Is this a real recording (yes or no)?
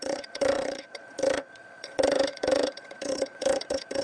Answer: no